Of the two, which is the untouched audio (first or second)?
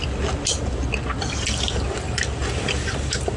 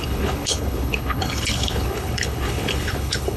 first